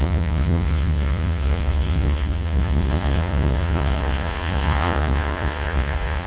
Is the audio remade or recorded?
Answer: remade